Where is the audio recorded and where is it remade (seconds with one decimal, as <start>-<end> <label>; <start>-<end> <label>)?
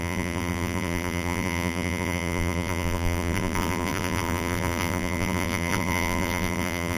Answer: 0.0-7.0 remade